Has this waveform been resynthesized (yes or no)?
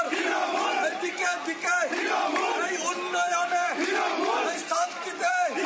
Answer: yes